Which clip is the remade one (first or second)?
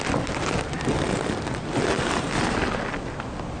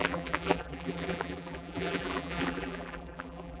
second